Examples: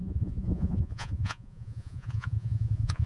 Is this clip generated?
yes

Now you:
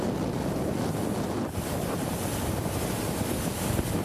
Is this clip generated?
no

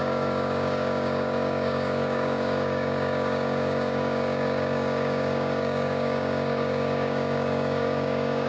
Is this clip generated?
yes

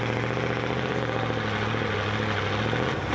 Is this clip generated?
no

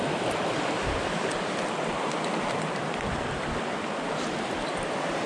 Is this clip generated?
no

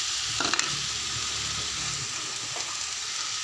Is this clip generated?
no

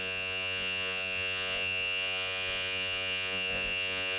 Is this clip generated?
yes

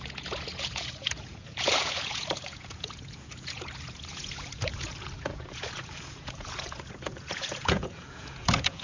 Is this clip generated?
yes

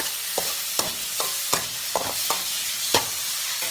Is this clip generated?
yes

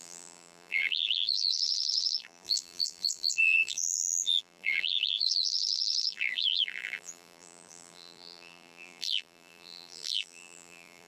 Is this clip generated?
yes